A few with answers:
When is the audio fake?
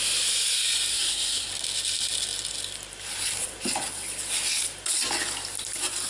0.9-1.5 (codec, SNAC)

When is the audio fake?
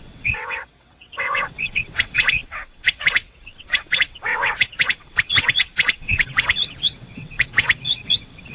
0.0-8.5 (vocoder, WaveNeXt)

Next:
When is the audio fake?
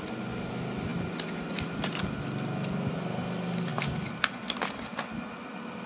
none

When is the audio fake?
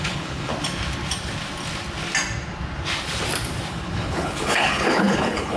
0.0-0.5 (codec, HILCodec); 3.7-5.6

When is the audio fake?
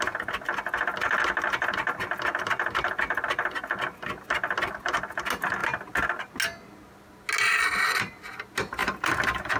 8.8-9.6 (vocoder, BigVGAN v2)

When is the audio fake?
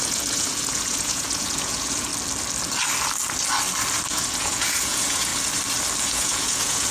0.0-2.1 (vocoder, Vocos); 4.1-5.3; 6.0-6.9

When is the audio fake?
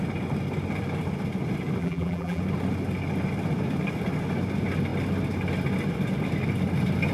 1.8-2.4 (vocoder, BigVGAN v2)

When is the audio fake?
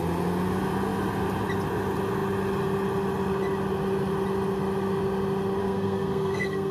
5.6-6.7 (codec, SNAC)